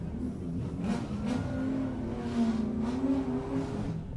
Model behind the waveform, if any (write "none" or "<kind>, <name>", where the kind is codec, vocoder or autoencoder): none